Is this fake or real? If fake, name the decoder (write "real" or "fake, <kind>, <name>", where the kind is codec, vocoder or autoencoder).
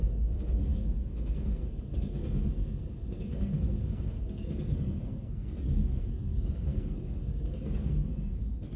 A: fake, codec, SNAC